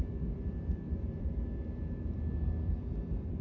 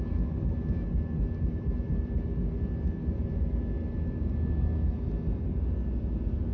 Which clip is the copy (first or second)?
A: first